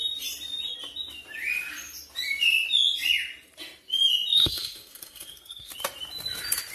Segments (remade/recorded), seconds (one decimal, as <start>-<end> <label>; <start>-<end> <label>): 0.0-4.3 recorded; 4.3-5.7 remade; 5.7-6.7 recorded